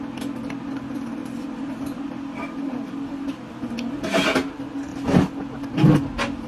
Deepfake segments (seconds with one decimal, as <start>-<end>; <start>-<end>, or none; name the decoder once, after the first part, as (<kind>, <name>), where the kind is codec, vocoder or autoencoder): 1.2-2.4 (vocoder, BigVGAN v2)